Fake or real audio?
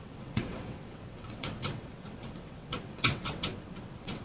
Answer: fake